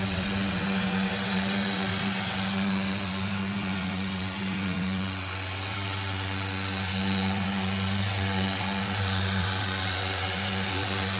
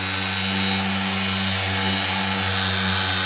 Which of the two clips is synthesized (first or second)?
first